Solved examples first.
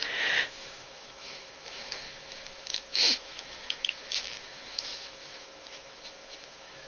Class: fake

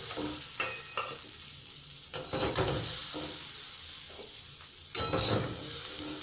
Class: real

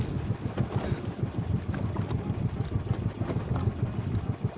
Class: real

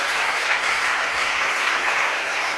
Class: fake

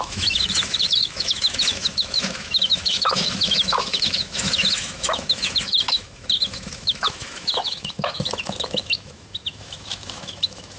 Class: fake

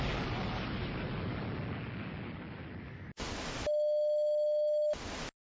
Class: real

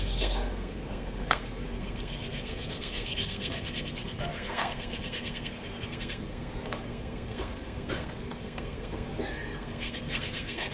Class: fake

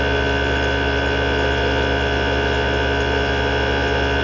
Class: real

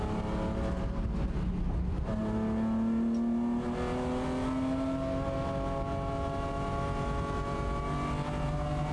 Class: real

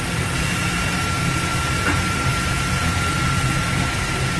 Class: fake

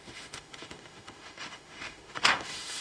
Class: fake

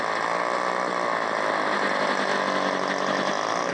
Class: real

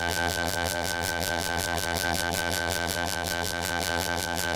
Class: fake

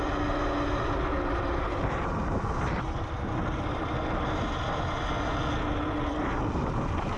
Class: real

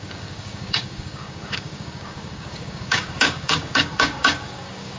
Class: fake